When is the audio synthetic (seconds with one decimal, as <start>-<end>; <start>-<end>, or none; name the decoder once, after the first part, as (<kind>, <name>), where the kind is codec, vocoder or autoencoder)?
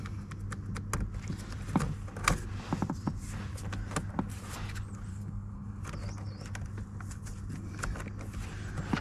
5.1-5.8 (codec, SNAC)